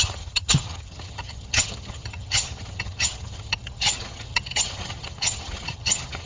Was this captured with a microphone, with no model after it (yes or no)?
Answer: no